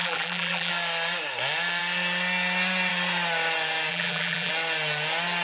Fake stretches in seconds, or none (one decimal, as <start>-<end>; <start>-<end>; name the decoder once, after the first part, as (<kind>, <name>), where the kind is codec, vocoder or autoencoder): 0.0-0.7 (vocoder, BigVGAN v2); 3.9-4.5